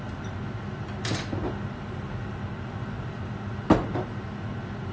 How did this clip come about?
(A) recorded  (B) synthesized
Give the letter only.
A